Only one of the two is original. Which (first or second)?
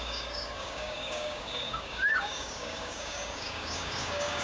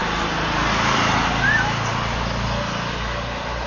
second